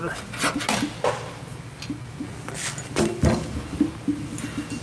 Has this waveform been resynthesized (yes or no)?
no